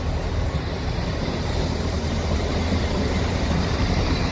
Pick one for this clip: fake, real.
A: fake